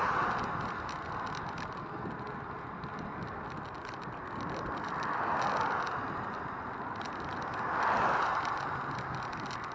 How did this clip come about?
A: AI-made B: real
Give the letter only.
B